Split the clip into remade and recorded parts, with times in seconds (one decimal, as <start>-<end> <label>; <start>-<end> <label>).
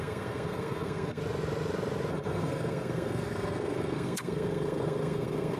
0.0-1.2 remade; 1.2-2.1 recorded; 2.1-5.6 remade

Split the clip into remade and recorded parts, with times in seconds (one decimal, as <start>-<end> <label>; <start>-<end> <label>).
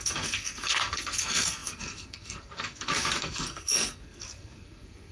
0.0-5.1 remade